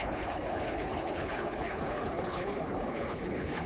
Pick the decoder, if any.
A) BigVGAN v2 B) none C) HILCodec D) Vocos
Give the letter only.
C